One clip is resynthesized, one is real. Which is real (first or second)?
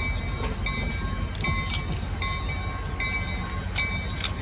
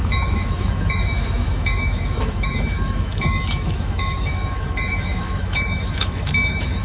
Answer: first